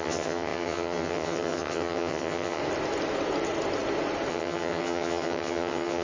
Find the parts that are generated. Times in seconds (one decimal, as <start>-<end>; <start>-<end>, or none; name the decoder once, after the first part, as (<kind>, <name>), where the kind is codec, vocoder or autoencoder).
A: 0.0-2.6 (vocoder, HiFi-GAN); 4.3-6.0